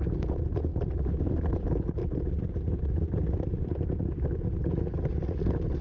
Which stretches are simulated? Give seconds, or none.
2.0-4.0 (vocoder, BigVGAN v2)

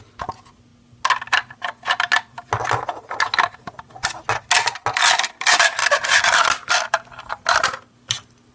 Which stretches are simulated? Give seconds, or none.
5.8-8.5 (vocoder, BigVGAN v2)

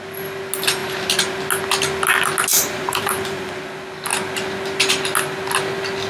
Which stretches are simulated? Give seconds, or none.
2.5-3.6 (vocoder, BigVGAN v2)

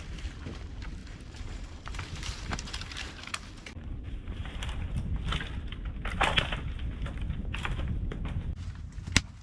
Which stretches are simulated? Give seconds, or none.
1.0-5.2 (vocoder, BigVGAN v2); 7.4-8.2

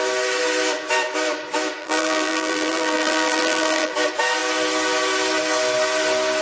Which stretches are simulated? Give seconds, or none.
1.8-3.9 (vocoder, BigVGAN v2)

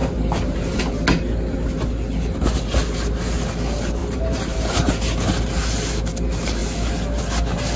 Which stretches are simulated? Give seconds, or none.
0.0-0.8 (vocoder, BigVGAN v2); 4.0-4.9